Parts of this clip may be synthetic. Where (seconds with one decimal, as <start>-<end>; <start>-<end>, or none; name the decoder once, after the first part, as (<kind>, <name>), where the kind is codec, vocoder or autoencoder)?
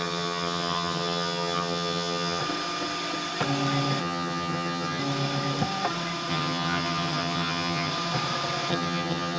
0.0-2.4 (vocoder, HiFi-GAN); 4.0-5.0; 6.3-7.9; 8.7-9.4